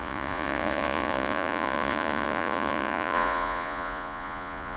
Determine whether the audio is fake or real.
fake